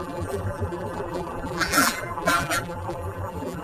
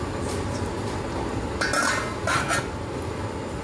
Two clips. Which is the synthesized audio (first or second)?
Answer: first